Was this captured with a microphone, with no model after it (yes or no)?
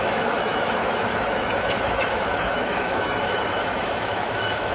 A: no